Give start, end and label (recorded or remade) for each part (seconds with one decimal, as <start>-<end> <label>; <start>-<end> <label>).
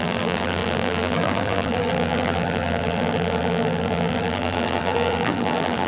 0.0-5.9 remade